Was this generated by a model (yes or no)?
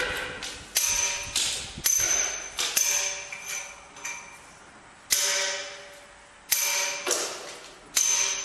no